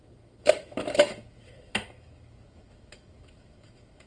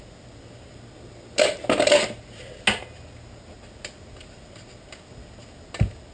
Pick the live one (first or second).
second